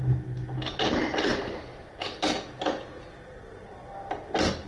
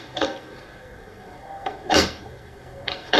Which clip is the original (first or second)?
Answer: first